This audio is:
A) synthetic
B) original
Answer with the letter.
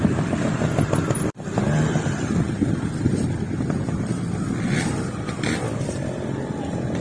B